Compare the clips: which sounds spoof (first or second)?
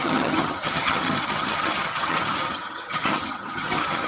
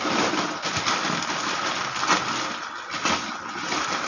first